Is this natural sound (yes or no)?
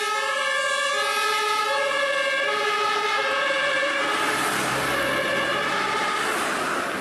yes